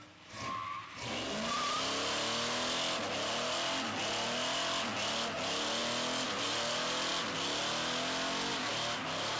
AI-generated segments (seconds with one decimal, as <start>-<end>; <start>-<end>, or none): none